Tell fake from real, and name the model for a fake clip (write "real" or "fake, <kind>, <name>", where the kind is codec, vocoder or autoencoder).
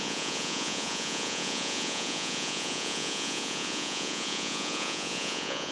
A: fake, vocoder, Vocos